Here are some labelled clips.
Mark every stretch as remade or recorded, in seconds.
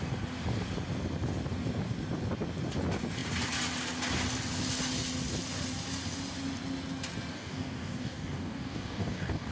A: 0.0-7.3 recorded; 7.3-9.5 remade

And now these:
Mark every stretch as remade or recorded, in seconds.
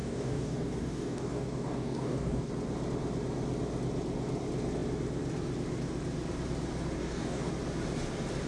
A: 0.0-2.5 remade; 2.5-7.0 recorded; 7.0-7.5 remade; 7.5-8.5 recorded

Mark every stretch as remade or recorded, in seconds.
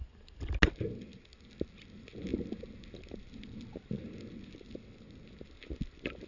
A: 0.0-6.3 recorded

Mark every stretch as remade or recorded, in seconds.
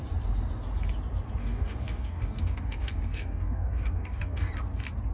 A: 0.0-1.4 recorded; 1.4-4.5 remade; 4.5-5.1 recorded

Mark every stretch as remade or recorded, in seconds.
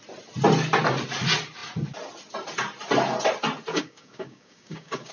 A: 0.0-3.7 recorded; 3.7-5.1 remade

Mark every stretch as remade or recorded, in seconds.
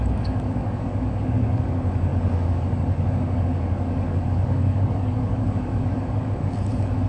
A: 0.0-7.1 remade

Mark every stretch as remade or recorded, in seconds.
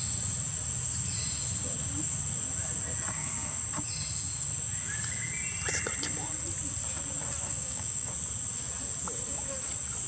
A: 0.0-7.5 recorded; 7.5-8.1 remade; 8.1-10.1 recorded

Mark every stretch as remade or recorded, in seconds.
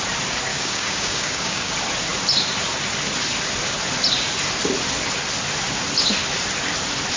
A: 0.0-0.5 recorded; 0.5-1.7 remade; 1.7-7.2 recorded